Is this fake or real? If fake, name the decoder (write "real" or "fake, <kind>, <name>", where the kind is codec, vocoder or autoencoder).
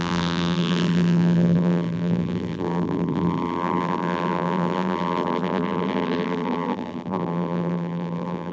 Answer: fake, vocoder, BigVGAN v2